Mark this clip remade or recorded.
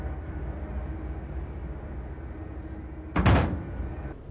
recorded